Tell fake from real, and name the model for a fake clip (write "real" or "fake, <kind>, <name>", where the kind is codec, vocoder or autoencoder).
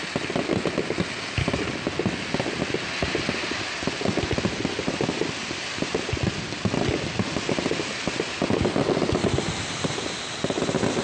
real